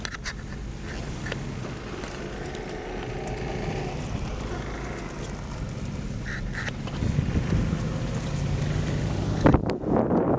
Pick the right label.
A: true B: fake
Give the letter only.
A